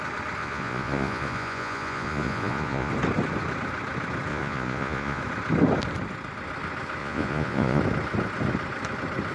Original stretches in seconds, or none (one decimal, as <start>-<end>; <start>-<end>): 0.0-0.4; 2.9-4.3; 5.2-7.0; 7.8-9.3